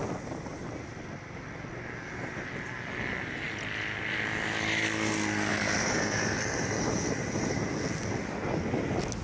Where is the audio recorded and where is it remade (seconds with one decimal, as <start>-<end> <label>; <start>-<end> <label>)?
0.0-5.5 recorded; 5.5-7.7 remade; 7.7-9.2 recorded